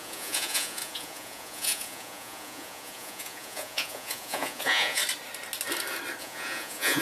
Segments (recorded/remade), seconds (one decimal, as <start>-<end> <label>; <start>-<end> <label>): 0.0-5.0 remade; 5.0-6.2 recorded; 6.2-7.0 remade